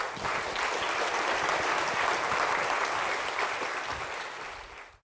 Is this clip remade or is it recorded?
recorded